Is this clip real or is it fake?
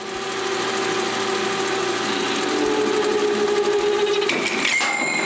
real